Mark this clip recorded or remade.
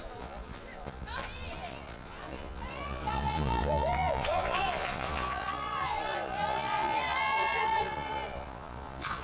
remade